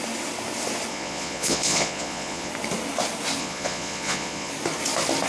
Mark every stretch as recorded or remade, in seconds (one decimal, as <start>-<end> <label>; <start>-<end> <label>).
0.0-0.9 recorded; 0.9-2.5 remade; 2.5-3.4 recorded; 3.4-4.5 remade; 4.5-5.3 recorded